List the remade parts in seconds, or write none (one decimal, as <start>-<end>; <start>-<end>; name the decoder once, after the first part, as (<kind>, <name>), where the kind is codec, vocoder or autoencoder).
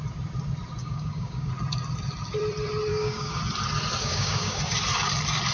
0.8-1.5 (codec, DAC); 2.9-3.4; 4.0-4.6